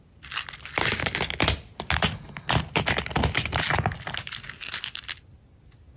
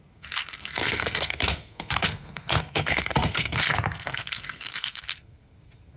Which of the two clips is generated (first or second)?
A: second